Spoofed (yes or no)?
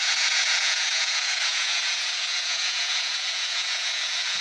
yes